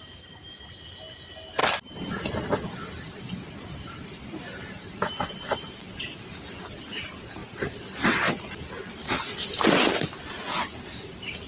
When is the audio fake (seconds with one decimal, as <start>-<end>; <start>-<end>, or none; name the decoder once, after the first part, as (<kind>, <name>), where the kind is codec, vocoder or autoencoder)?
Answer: none